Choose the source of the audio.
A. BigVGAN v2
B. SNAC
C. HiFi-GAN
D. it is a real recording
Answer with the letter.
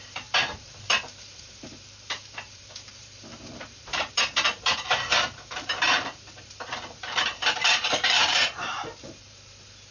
A